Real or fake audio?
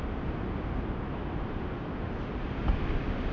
real